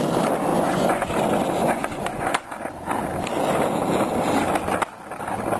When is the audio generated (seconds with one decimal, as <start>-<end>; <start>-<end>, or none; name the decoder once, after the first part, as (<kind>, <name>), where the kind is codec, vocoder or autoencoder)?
0.5-1.1 (vocoder, Vocos); 1.6-2.5